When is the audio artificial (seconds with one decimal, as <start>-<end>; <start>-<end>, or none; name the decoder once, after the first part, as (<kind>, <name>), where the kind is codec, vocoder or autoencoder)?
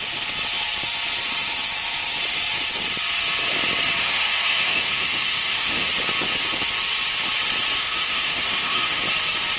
4.0-5.9 (autoencoder, DAC-VAE); 7.8-9.0